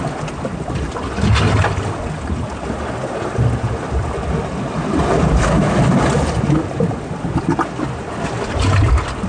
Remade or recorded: recorded